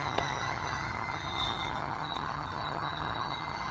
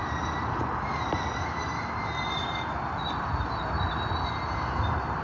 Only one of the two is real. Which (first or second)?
second